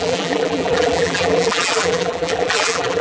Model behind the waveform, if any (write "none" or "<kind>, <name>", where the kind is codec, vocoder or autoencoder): vocoder, BigVGAN v2